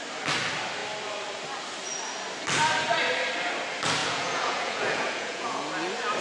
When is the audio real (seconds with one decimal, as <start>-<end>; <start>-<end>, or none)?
0.0-4.0; 5.6-6.2